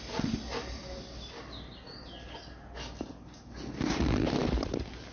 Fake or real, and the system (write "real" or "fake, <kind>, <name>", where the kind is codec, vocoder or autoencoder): real